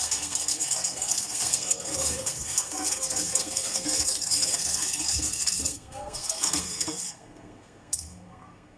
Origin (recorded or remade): remade